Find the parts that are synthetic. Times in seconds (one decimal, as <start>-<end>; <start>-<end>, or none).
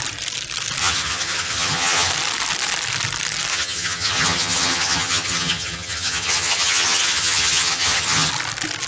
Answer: 0.8-2.1; 3.5-8.3